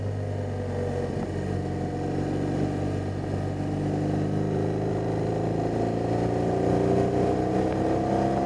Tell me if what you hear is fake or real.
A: real